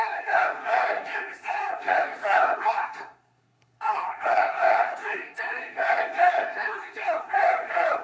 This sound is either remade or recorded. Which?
remade